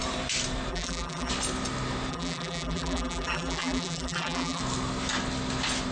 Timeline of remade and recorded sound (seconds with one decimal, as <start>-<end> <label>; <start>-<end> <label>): 0.0-0.7 recorded; 0.7-1.3 remade; 1.3-2.1 recorded; 2.1-4.6 remade; 4.6-5.9 recorded